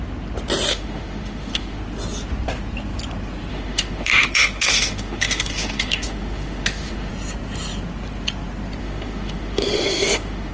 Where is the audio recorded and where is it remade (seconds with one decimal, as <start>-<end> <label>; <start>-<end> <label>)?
0.0-0.7 recorded; 0.7-1.8 remade; 1.8-3.5 recorded; 3.5-7.1 remade; 7.1-8.8 recorded; 8.8-10.5 remade